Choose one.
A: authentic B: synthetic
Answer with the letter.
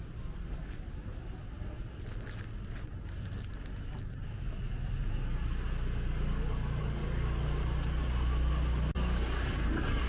A